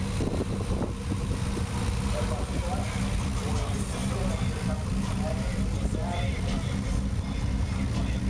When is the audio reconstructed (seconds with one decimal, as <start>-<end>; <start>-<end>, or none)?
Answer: none